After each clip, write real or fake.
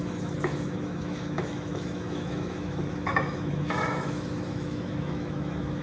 fake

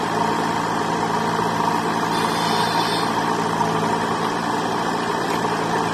real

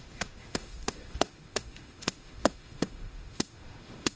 fake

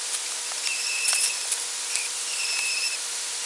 real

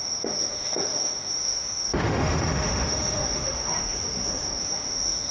fake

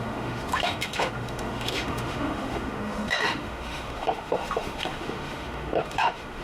fake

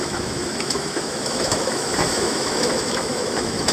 fake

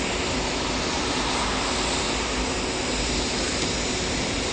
real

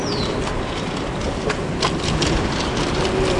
real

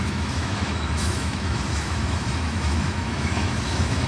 fake